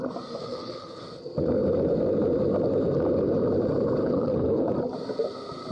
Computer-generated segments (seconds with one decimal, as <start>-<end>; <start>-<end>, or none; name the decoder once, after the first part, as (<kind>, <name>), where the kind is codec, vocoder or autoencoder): 0.4-1.0 (codec, HILCodec); 4.0-4.7